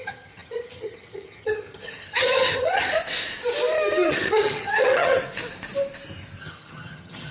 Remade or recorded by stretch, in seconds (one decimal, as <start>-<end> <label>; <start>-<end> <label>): 0.0-2.9 remade; 2.9-4.1 recorded; 4.1-5.2 remade; 5.2-6.4 recorded; 6.4-7.3 remade